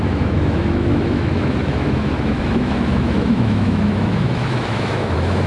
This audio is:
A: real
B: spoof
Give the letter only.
B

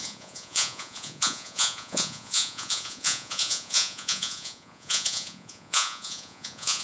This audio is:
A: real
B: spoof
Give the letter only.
B